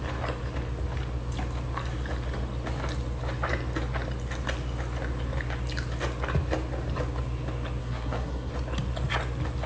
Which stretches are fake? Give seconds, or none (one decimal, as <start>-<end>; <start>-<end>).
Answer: 7.8-8.5